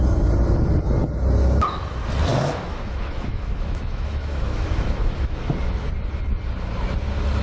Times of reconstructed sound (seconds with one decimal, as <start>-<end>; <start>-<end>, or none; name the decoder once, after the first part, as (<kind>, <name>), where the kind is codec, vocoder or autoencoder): 2.3-5.5 (autoencoder, DAC-VAE)